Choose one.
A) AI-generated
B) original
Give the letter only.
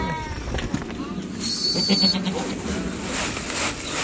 B